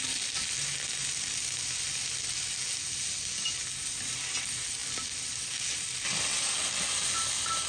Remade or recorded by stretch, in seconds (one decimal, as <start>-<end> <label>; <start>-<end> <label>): 0.0-7.7 recorded